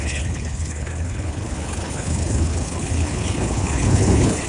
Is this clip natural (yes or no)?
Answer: no